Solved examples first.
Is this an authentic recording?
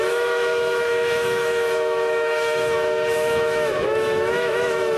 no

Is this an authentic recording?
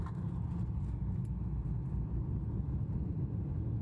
yes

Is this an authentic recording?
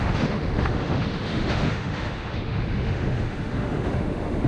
no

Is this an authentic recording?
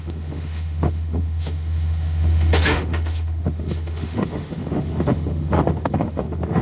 no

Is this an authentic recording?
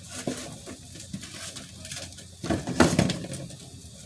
yes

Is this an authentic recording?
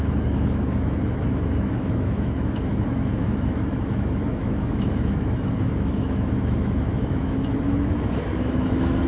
no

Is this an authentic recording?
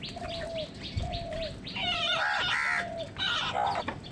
yes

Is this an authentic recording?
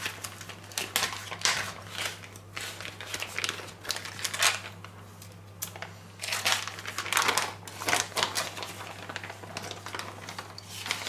yes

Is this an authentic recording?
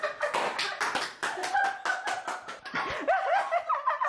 yes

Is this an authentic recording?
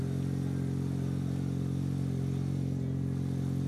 yes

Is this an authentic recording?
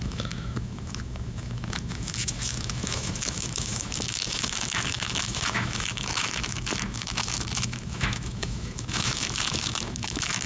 no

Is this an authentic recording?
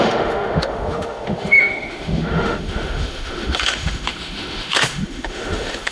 no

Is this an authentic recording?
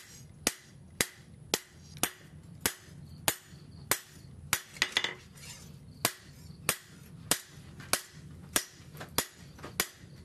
yes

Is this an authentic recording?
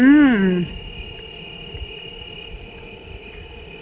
yes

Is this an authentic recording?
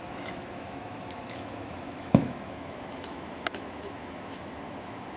no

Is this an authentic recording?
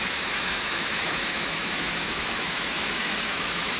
no